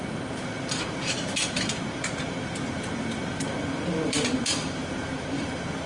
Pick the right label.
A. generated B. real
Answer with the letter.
A